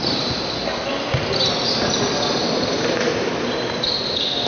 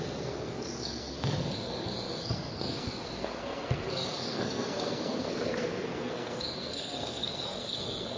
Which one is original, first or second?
first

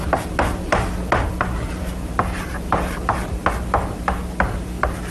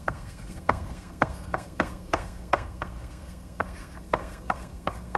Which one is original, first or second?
first